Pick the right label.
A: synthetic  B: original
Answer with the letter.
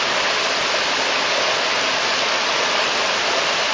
B